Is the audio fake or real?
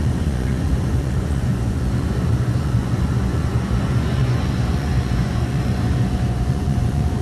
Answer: fake